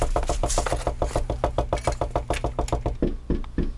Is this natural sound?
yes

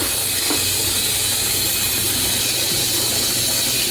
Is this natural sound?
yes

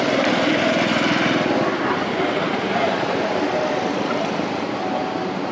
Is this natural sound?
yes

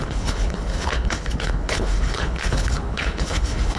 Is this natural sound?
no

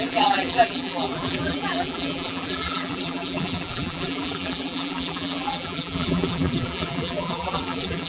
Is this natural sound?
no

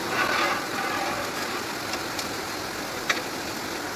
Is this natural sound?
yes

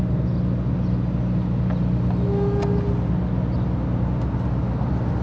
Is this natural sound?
yes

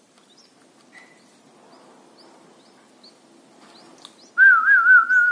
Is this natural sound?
yes